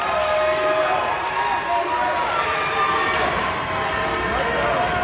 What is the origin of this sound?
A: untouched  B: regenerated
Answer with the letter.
A